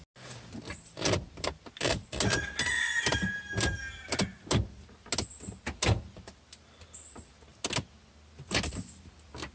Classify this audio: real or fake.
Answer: real